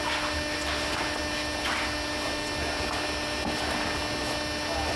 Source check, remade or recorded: recorded